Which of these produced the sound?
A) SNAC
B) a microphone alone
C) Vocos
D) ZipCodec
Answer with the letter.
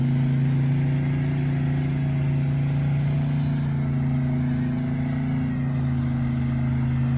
B